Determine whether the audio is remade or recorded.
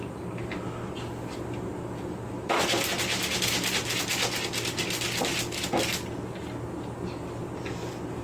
recorded